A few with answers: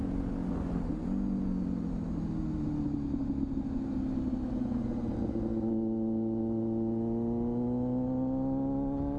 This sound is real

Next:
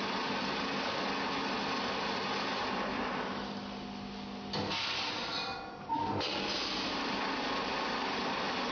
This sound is real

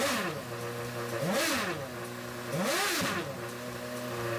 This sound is real